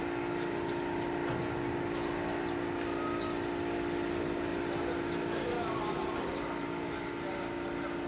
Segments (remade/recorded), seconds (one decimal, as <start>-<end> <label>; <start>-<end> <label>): 0.0-8.1 recorded